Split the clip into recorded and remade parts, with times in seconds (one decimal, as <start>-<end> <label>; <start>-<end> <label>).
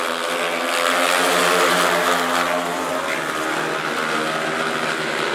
0.0-1.4 recorded; 1.4-2.9 remade; 2.9-5.3 recorded